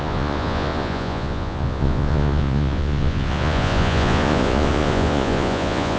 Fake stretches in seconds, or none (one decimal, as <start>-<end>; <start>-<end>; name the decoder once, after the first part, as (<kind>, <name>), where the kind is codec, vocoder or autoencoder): 0.0-6.0 (vocoder, Vocos)